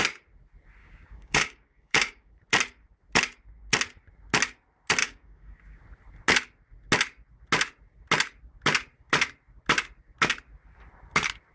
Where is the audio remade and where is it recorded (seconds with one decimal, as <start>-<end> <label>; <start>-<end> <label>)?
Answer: 0.0-0.8 recorded; 0.8-2.3 remade; 2.3-5.0 recorded; 5.0-5.8 remade; 5.8-11.5 recorded